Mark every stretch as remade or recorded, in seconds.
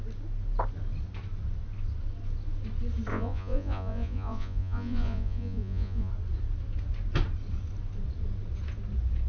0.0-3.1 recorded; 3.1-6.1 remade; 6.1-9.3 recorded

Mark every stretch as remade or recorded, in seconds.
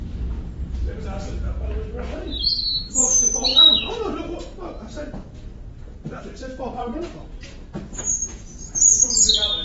0.0-3.5 recorded; 3.5-6.2 remade; 6.2-6.8 recorded; 6.8-7.7 remade; 7.7-9.6 recorded